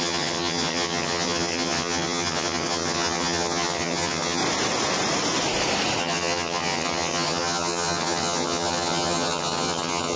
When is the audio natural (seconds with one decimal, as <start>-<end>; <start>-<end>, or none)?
4.4-6.0

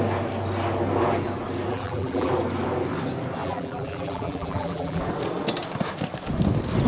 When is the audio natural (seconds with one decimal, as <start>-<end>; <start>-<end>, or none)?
0.0-1.7; 2.3-3.4; 5.0-6.9

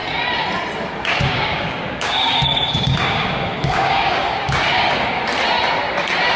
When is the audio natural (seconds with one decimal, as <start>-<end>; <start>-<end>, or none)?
0.0-0.9; 5.2-6.4